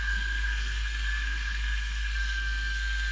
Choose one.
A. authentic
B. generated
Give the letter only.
B